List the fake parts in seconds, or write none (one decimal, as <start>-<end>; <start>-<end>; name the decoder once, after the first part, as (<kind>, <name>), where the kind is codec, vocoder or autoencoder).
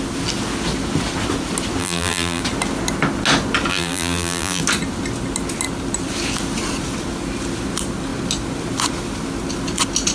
1.8-2.4 (vocoder, BigVGAN v2); 3.7-4.6